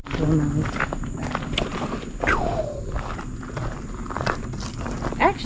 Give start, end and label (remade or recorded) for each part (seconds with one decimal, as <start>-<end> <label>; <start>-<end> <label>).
0.0-5.5 recorded